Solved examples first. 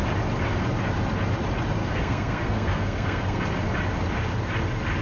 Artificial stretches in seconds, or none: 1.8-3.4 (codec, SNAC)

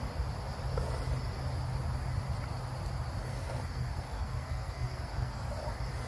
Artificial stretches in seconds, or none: 3.2-5.5 (codec, SNAC)

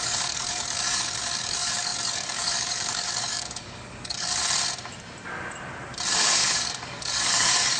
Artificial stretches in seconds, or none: 0.0-4.4 (codec, DAC); 6.1-7.8